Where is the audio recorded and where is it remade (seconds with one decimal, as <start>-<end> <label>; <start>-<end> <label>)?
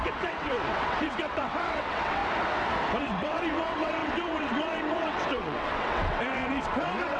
0.0-2.2 remade; 2.2-3.0 recorded; 3.0-7.2 remade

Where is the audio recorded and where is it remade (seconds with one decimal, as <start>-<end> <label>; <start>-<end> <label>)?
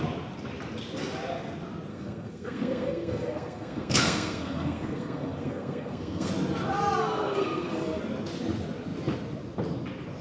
0.0-1.9 recorded; 1.9-6.3 remade; 6.3-7.0 recorded; 7.0-8.0 remade; 8.0-10.2 recorded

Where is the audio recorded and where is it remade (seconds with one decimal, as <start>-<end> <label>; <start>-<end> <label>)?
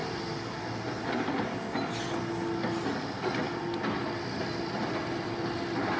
0.0-3.6 recorded; 3.6-6.0 remade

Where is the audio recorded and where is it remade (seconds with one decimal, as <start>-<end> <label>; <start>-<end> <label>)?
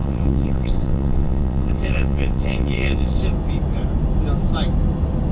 0.0-3.2 remade; 3.2-5.3 recorded